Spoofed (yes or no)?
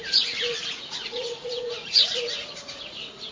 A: yes